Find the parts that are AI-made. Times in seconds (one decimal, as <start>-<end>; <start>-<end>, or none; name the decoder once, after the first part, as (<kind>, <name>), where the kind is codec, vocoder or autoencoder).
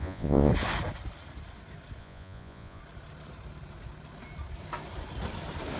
0.0-0.5 (vocoder, Vocos); 2.0-2.8